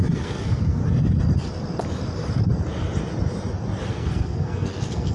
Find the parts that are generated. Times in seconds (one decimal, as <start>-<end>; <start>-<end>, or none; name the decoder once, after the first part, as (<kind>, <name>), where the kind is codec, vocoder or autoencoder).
0.0-0.8 (codec, SNAC); 3.9-5.1